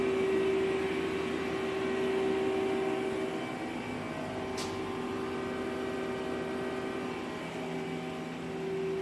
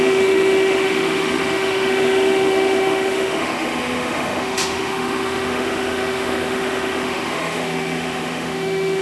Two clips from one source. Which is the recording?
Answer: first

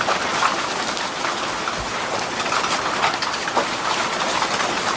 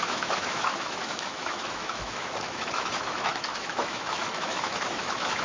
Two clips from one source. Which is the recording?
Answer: first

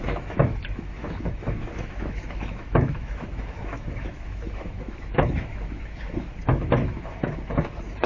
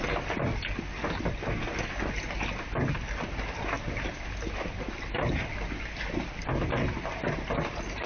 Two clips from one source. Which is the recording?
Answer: second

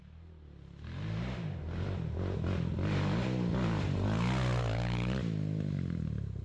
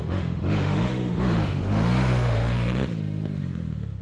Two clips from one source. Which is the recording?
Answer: first